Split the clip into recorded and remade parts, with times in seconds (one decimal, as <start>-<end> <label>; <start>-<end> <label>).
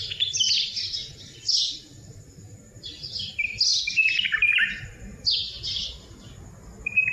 0.0-7.1 recorded